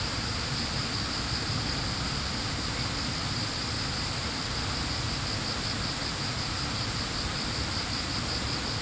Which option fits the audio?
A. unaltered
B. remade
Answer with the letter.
A